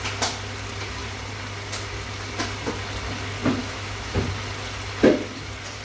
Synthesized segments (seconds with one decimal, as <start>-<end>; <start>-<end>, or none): 3.6-4.2